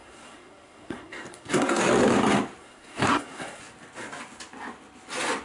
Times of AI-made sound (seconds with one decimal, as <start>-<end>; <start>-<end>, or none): 0.0-1.8; 2.6-3.6